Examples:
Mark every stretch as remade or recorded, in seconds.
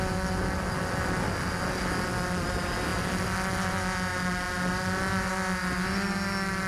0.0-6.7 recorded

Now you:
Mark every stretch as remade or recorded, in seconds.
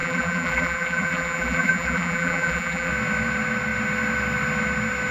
0.0-2.9 remade; 2.9-5.1 recorded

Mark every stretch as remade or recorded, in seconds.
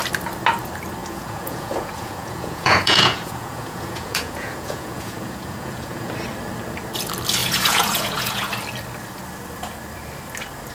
0.0-1.0 recorded; 1.0-6.1 remade; 6.1-7.4 recorded; 7.4-8.5 remade; 8.5-10.7 recorded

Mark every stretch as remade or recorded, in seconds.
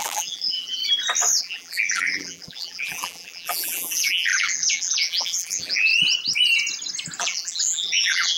0.0-0.8 remade; 0.8-1.4 recorded; 1.4-5.9 remade; 5.9-7.2 recorded; 7.2-8.4 remade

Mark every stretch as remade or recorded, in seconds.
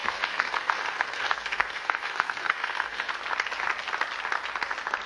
0.0-3.1 remade; 3.1-5.1 recorded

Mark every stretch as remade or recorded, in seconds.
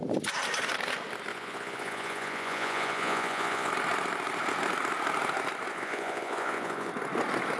0.0-1.3 recorded; 1.3-3.7 remade; 3.7-5.7 recorded; 5.7-6.9 remade; 6.9-7.6 recorded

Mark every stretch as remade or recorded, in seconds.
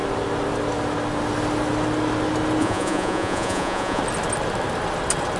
0.0-2.6 recorded; 2.6-4.0 remade; 4.0-5.4 recorded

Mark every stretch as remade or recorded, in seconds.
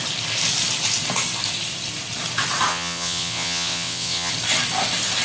0.0-2.7 recorded; 2.7-4.3 remade; 4.3-5.2 recorded